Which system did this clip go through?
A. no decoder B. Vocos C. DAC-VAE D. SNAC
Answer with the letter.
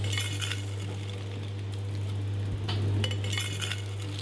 A